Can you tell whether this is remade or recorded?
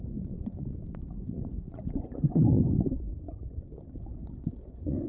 remade